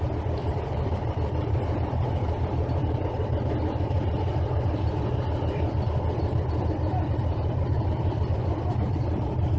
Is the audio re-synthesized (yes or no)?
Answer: yes